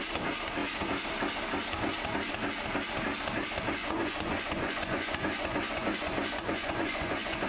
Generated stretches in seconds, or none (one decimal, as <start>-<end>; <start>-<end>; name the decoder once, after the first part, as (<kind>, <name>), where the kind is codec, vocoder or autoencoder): 3.8-7.5 (vocoder, Vocos)